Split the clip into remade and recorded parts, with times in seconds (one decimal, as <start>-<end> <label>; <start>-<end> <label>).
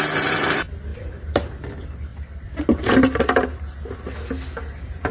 0.0-0.9 recorded; 0.9-1.7 remade; 1.7-2.1 recorded; 2.1-2.8 remade; 2.8-5.1 recorded